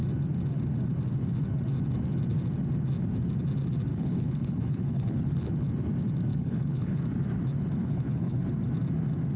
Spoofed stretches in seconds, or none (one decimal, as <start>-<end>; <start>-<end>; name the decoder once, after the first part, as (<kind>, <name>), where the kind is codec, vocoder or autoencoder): 3.9-5.5 (codec, HILCodec); 6.3-7.0; 7.8-8.4